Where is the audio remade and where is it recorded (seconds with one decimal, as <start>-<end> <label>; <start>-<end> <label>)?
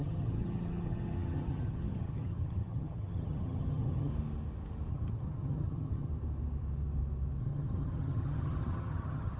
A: 0.0-4.1 remade; 4.1-4.9 recorded; 4.9-6.1 remade; 6.1-7.4 recorded; 7.4-9.4 remade